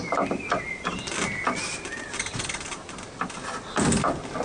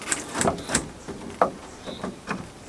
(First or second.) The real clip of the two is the first